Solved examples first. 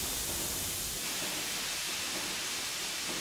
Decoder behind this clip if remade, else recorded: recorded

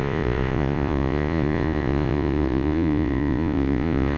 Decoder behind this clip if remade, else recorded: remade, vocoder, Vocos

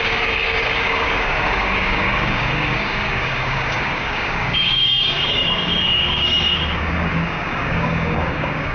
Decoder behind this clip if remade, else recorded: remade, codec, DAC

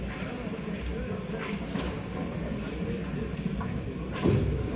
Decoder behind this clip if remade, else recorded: recorded